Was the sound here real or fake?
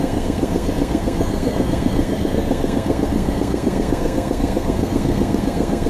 fake